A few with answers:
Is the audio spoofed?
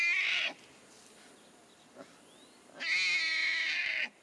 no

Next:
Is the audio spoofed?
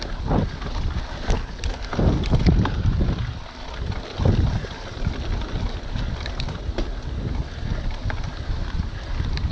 no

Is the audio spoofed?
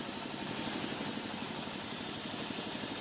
no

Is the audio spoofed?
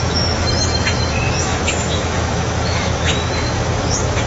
yes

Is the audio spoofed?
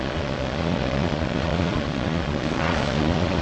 yes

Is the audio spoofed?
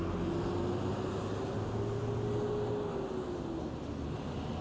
no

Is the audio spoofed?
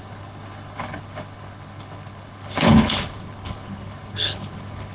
yes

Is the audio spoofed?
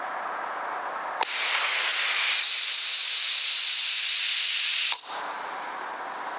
no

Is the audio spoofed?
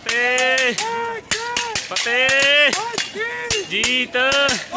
no